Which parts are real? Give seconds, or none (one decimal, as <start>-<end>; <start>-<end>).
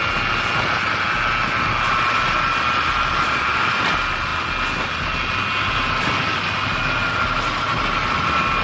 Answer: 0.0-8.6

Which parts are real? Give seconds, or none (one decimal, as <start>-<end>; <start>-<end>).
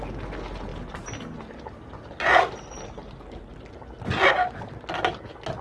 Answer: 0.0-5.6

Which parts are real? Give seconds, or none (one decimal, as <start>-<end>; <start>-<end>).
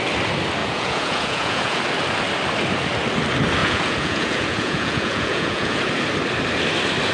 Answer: 0.0-0.6; 1.8-3.6; 5.8-7.1